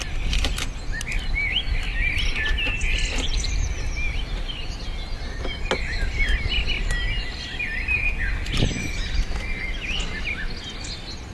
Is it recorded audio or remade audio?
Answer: recorded